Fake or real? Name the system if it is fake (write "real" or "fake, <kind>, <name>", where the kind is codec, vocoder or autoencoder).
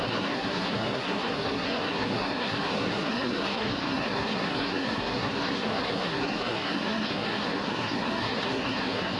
fake, codec, SNAC